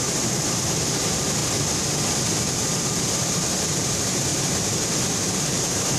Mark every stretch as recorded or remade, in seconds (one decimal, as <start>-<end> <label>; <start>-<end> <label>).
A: 0.0-1.4 remade; 1.4-2.5 recorded; 2.5-6.0 remade